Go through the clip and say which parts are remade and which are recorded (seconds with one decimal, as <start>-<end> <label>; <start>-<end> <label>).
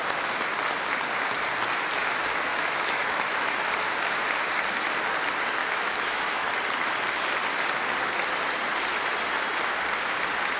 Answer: 0.0-2.5 recorded; 2.5-3.5 remade; 3.5-5.6 recorded; 5.6-6.5 remade; 6.5-10.6 recorded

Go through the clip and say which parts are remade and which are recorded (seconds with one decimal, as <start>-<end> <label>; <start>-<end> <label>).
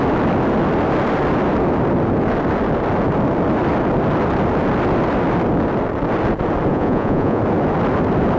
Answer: 0.0-6.7 recorded; 6.7-7.4 remade; 7.4-8.4 recorded